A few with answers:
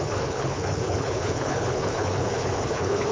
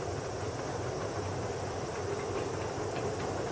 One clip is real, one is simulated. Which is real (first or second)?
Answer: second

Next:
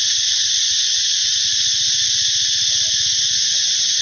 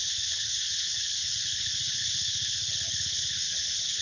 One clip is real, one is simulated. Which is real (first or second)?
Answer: first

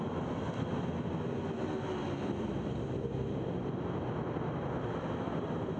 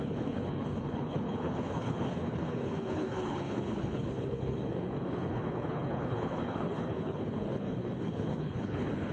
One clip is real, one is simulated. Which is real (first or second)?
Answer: first